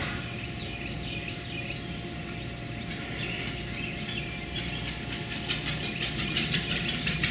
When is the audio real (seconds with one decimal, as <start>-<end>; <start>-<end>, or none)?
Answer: 0.0-7.3